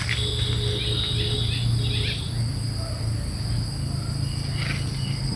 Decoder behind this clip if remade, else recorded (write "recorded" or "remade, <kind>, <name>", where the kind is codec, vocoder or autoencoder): recorded